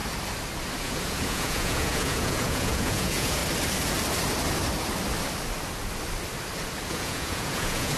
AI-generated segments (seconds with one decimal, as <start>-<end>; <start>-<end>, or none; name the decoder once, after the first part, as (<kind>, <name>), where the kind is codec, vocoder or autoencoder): 0.8-3.4 (vocoder, Vocos); 6.9-8.0